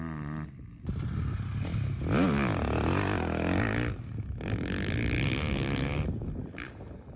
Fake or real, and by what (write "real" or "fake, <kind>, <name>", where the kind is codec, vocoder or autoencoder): real